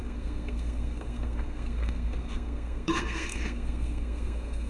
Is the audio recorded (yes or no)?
no